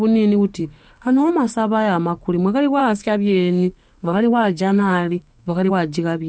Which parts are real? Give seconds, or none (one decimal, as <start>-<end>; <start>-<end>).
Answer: 0.0-0.6; 1.3-2.8; 5.7-6.3